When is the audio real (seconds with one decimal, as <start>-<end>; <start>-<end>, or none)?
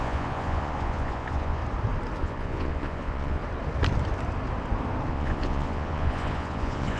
1.6-2.2; 3.4-5.1